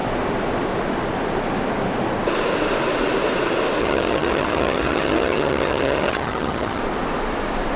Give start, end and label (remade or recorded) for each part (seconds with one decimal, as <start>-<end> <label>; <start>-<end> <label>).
0.0-3.8 recorded; 3.8-6.8 remade; 6.8-7.8 recorded